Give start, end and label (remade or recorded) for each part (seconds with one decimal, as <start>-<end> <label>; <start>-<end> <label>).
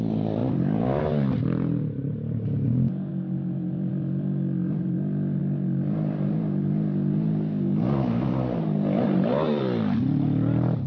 0.0-0.4 recorded; 0.4-1.0 remade; 1.0-3.1 recorded; 3.1-3.9 remade; 3.9-10.9 recorded